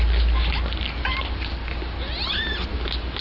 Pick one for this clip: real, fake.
real